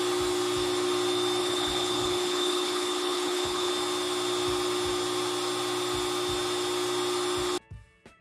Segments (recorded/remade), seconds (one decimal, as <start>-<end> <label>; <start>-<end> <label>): 0.0-1.4 recorded; 1.4-3.7 remade; 3.7-8.2 recorded